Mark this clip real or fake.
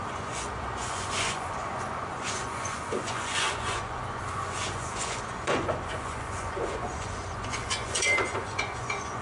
fake